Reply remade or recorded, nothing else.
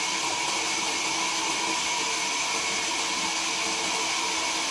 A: recorded